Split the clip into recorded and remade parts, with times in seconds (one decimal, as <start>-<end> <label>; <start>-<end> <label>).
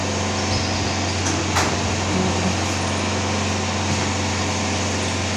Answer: 0.0-5.4 recorded